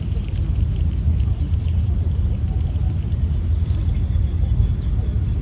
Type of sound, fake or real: real